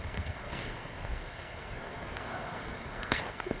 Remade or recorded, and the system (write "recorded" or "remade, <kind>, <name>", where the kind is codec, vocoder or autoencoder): remade, codec, SNAC